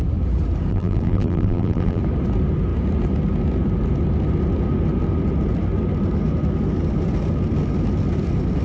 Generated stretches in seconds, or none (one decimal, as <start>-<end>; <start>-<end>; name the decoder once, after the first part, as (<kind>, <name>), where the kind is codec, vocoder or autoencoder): 0.7-2.0 (vocoder, BigVGAN v2)